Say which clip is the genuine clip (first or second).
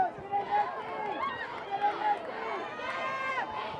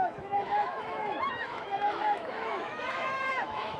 first